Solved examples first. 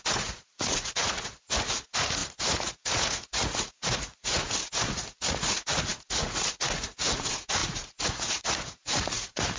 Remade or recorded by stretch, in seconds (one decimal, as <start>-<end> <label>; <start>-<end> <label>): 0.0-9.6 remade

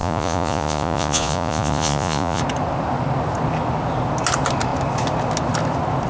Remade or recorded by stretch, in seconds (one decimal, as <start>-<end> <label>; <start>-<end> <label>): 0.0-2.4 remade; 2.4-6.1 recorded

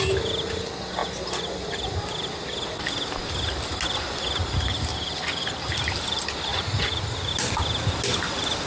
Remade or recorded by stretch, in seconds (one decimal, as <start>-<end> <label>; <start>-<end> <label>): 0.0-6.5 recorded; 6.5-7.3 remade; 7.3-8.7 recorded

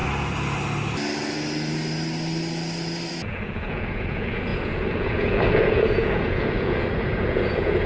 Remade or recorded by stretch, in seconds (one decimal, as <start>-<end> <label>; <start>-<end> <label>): 0.0-3.1 recorded; 3.1-7.9 remade

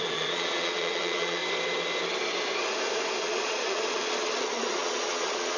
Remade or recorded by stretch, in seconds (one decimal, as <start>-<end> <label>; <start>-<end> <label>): 0.0-1.4 remade; 1.4-3.2 recorded; 3.2-5.6 remade